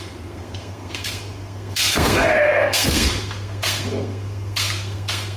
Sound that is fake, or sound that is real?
fake